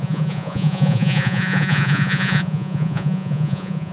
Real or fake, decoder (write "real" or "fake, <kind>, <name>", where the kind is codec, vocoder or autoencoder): fake, vocoder, Vocos